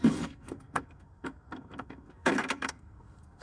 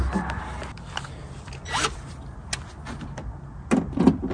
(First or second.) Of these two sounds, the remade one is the first